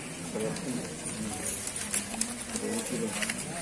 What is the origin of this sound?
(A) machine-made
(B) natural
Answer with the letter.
B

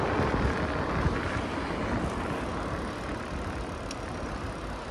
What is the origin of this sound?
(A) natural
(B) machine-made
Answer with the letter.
A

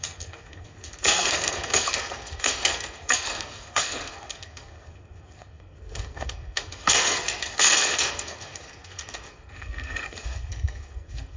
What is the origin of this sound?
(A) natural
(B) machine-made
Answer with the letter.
B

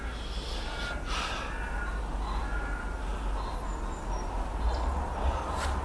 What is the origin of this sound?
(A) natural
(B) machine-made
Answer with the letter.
A